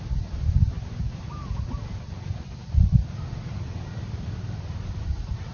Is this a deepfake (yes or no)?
no